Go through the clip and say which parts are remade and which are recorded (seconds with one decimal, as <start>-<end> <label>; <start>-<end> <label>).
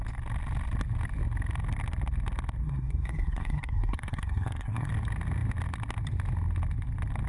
0.0-2.6 recorded; 2.6-4.9 remade; 4.9-7.3 recorded